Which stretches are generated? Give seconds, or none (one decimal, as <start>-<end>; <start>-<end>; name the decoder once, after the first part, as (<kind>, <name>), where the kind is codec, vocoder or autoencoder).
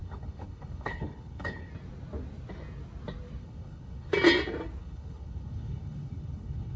0.0-1.7 (codec, HILCodec); 3.4-4.1; 4.8-6.8